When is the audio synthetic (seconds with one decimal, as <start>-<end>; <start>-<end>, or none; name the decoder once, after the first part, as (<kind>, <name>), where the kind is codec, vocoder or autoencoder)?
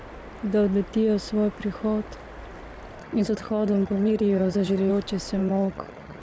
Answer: 3.0-4.9 (vocoder, HiFi-GAN); 5.4-6.2